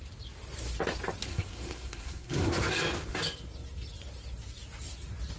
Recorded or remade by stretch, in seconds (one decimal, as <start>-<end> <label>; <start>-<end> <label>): 0.0-1.3 recorded; 1.3-2.5 remade; 2.5-5.4 recorded